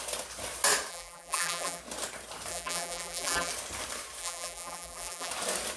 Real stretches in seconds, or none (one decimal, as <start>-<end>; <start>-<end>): 0.0-0.9; 1.8-2.5; 3.5-4.2; 5.3-5.8